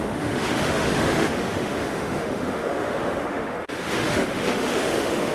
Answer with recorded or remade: remade